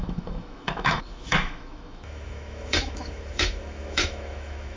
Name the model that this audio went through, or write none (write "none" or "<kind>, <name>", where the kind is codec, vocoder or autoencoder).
autoencoder, DAC-VAE